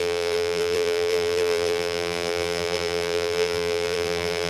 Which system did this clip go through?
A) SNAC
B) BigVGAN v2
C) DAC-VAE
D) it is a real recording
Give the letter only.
B